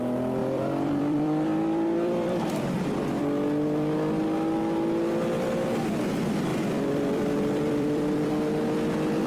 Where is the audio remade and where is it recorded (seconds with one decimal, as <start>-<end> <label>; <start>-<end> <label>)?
0.0-0.4 recorded; 0.4-3.2 remade; 3.2-6.5 recorded; 6.5-8.3 remade; 8.3-9.3 recorded